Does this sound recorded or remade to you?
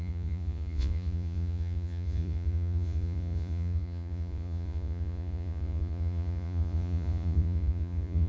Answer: remade